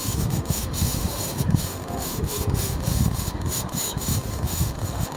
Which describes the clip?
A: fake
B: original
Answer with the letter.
A